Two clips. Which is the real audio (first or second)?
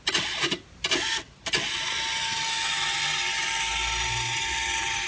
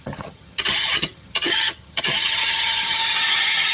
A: first